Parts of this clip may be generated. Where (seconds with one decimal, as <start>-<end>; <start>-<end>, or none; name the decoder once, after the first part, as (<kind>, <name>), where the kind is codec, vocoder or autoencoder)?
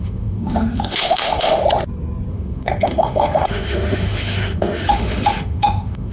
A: 0.0-1.6 (autoencoder, DAC-VAE); 2.3-6.1